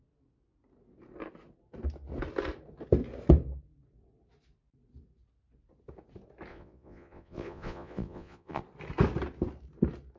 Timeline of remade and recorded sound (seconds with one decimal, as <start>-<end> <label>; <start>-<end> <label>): 0.0-6.5 recorded; 6.5-8.6 remade; 8.6-10.2 recorded